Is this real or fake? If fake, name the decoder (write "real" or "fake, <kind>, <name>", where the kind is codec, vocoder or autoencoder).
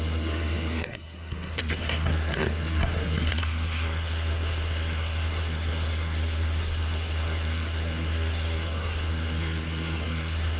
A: fake, codec, SNAC